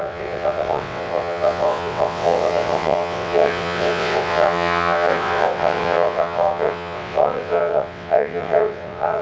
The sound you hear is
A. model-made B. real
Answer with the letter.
A